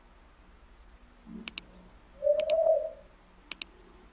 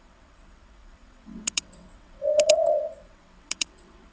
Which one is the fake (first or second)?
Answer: second